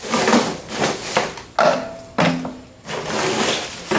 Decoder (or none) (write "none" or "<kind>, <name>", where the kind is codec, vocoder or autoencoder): none